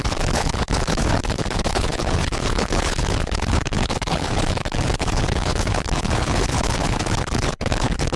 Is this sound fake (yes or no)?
yes